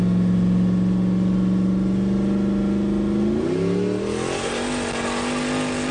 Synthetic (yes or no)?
no